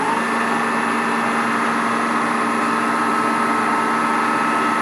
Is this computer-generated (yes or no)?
no